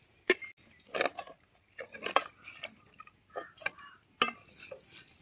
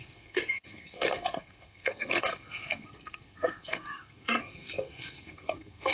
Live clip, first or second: first